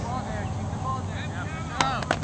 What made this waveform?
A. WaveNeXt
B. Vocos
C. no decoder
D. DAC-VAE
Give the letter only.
C